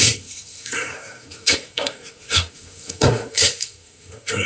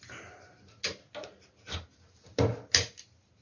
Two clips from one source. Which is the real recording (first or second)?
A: second